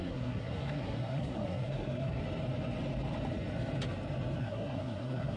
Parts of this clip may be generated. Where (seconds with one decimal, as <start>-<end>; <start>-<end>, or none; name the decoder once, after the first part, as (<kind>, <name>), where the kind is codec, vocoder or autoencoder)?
0.0-2.2 (codec, SNAC); 4.4-5.4